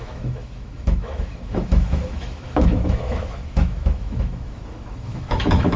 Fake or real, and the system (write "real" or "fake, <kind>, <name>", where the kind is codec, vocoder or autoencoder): fake, autoencoder, DAC-VAE